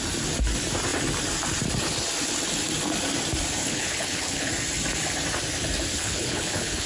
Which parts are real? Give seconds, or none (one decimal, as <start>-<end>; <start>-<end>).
0.0-3.6; 4.5-5.9